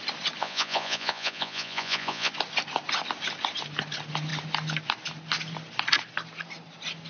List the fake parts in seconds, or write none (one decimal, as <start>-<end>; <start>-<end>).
0.4-2.3